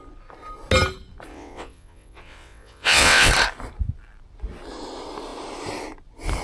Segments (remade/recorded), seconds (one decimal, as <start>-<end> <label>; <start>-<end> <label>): 0.0-1.3 recorded; 1.3-3.3 remade; 3.3-6.4 recorded

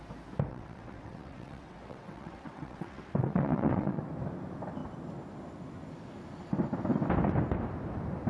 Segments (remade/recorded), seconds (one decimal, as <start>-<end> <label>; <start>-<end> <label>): 0.0-0.5 recorded; 0.5-4.0 remade; 4.0-8.3 recorded